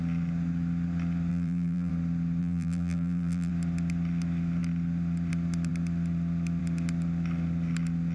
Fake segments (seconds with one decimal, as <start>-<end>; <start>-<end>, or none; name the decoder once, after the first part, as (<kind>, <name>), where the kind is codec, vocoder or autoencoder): 1.3-1.9 (vocoder, BigVGAN v2); 2.4-3.5